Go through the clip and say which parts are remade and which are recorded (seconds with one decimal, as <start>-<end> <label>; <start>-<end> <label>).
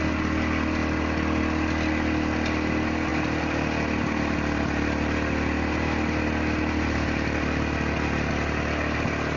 0.0-9.4 recorded